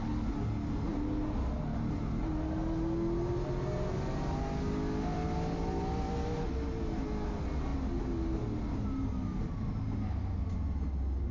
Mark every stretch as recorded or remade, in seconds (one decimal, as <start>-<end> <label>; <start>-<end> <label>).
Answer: 0.0-11.3 recorded